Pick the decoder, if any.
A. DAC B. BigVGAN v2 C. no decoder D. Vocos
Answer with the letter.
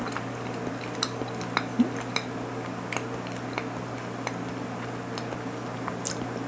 C